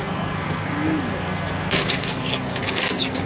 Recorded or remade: remade